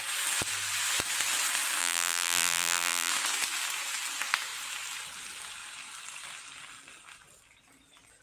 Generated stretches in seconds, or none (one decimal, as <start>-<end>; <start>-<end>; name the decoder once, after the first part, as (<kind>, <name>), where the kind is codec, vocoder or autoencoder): 1.8-3.1 (vocoder, BigVGAN v2)